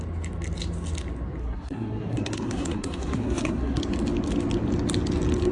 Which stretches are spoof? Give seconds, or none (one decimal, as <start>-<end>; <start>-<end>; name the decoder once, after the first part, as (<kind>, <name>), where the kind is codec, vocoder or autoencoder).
1.4-3.8 (codec, SNAC)